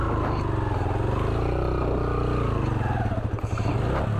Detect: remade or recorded recorded